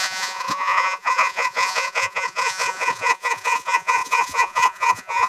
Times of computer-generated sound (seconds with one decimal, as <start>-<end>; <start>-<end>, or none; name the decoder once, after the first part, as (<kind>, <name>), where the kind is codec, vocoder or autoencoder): 0.0-5.3 (vocoder, Vocos)